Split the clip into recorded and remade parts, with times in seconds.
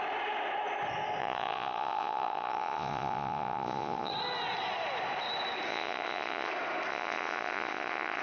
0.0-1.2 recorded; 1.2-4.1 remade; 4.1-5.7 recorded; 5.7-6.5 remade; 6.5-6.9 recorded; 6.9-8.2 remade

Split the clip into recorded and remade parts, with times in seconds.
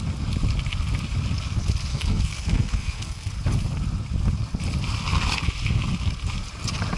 0.0-1.9 recorded; 1.9-3.3 remade; 3.3-7.0 recorded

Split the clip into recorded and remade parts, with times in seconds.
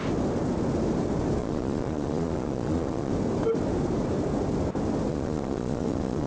0.0-1.4 recorded; 1.4-3.1 remade; 3.1-5.1 recorded; 5.1-6.3 remade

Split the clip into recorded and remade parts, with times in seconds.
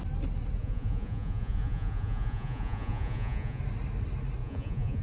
0.0-0.6 recorded; 0.6-3.6 remade; 3.6-4.4 recorded; 4.4-5.0 remade